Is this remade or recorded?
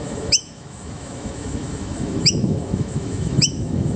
remade